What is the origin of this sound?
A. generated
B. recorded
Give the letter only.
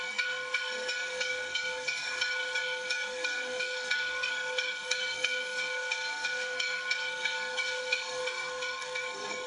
A